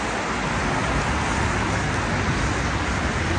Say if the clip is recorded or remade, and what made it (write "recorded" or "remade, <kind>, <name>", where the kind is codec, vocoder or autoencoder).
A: recorded